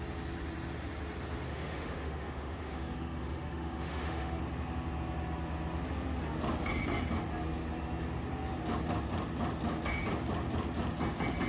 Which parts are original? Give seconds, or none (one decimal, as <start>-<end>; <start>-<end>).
0.0-1.5; 4.4-11.5